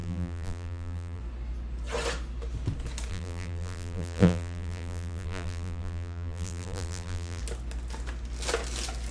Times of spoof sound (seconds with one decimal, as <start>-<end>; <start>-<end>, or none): 0.0-1.2; 3.1-7.4